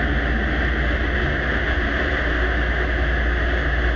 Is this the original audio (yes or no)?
yes